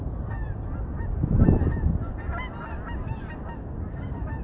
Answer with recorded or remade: recorded